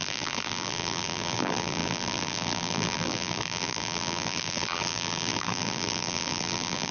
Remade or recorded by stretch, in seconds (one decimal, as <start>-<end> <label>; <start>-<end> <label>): 0.0-6.9 remade